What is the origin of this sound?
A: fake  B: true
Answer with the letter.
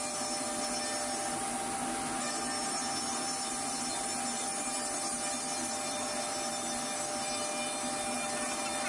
B